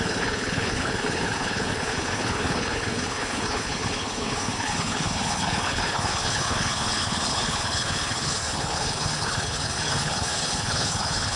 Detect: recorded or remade remade